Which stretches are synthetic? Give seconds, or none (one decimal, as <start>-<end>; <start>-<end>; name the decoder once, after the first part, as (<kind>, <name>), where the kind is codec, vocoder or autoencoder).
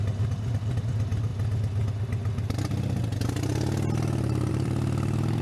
0.0-1.3 (vocoder, BigVGAN v2); 4.5-5.4